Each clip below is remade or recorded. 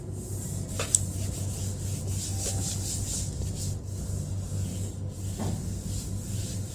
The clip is recorded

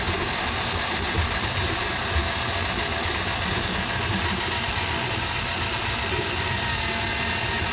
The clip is recorded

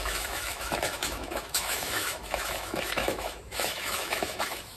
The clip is remade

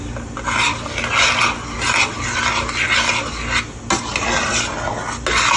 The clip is recorded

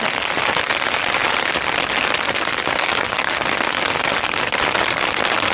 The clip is recorded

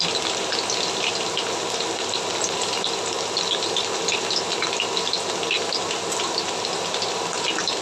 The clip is recorded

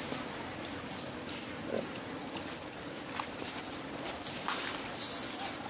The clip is recorded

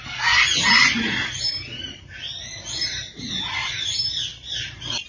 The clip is recorded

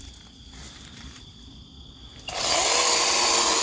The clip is recorded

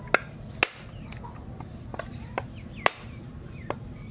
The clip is recorded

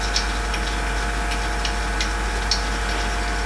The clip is recorded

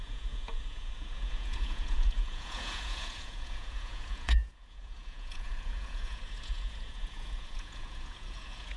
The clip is remade